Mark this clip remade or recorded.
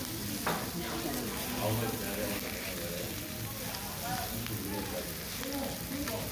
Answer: recorded